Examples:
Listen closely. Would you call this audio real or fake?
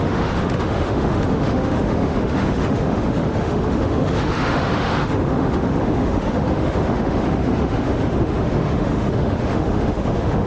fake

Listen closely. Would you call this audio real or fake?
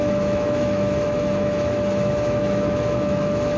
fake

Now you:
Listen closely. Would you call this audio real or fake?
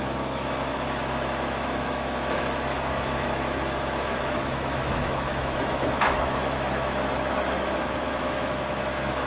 fake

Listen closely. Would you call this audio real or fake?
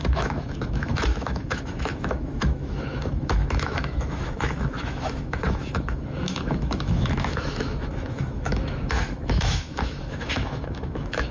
fake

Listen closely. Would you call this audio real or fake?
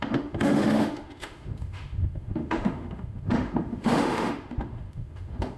fake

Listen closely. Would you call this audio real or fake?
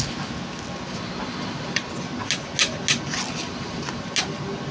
real